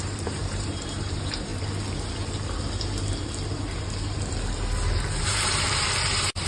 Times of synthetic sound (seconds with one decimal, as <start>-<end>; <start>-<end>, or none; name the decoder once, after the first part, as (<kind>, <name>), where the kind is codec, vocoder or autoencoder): 0.0-1.5 (vocoder, BigVGAN v2); 5.2-6.5